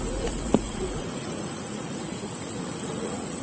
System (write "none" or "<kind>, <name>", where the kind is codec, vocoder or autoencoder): vocoder, Vocos